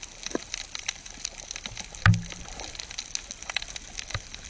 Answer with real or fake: real